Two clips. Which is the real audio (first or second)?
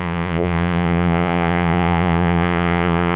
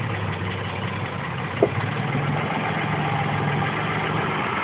second